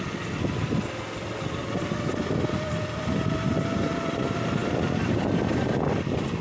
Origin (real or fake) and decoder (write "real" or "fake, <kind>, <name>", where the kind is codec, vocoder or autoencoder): real